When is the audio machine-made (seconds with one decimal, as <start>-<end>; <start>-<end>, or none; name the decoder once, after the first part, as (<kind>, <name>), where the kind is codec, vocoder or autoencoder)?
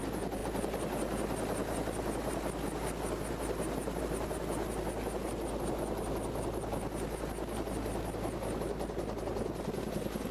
none